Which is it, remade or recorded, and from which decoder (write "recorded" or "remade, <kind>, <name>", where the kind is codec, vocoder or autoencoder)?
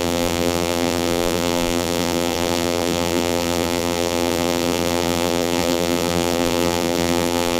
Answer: remade, vocoder, BigVGAN v2